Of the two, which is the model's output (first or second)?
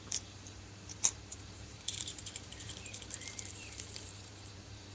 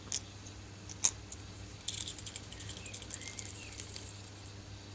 first